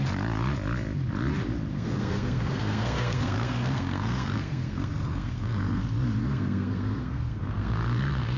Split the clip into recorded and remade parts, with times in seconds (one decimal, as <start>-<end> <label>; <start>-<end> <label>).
0.0-1.7 recorded; 1.7-5.8 remade; 5.8-6.2 recorded; 6.2-8.4 remade